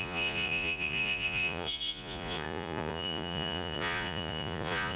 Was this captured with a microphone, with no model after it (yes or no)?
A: no